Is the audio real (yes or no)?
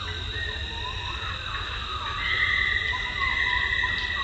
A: yes